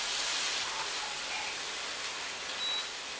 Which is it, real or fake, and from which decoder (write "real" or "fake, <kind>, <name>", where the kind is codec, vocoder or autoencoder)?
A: real